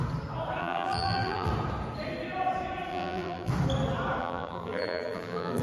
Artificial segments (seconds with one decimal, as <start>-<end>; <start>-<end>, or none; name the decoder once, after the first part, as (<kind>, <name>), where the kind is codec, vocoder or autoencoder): 0.6-1.5 (vocoder, BigVGAN v2); 2.9-3.5; 4.2-5.6